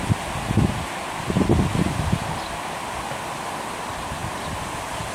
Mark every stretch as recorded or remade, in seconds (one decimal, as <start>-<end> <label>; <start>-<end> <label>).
0.0-4.2 recorded; 4.2-5.1 remade